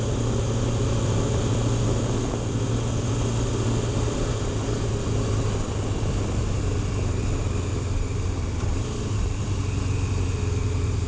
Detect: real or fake real